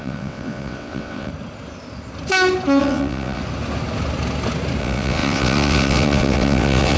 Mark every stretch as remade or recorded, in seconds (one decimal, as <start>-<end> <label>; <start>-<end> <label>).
0.0-1.3 remade; 1.3-2.8 recorded; 2.8-3.4 remade; 3.4-4.8 recorded; 4.8-7.0 remade